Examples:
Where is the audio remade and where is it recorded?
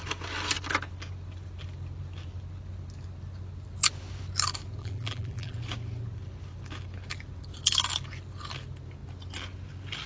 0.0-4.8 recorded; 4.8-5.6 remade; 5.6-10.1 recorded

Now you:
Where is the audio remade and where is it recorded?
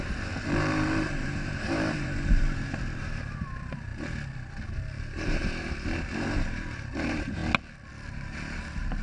0.0-3.9 remade; 3.9-5.0 recorded; 5.0-7.4 remade; 7.4-8.1 recorded; 8.1-9.0 remade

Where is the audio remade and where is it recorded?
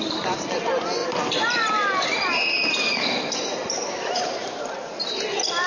0.0-5.7 remade